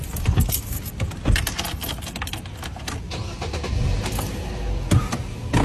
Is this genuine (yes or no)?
yes